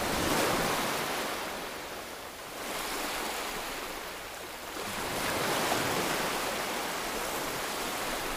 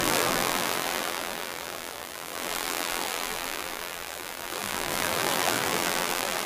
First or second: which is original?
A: first